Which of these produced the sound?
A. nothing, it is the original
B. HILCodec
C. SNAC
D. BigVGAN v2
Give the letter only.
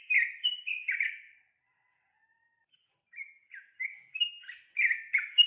D